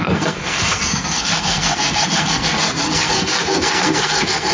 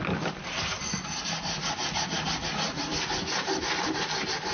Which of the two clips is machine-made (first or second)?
first